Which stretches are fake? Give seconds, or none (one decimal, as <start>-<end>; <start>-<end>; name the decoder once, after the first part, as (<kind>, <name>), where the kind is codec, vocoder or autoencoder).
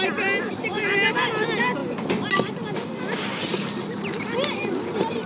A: 0.7-1.3 (vocoder, BigVGAN v2); 3.5-4.7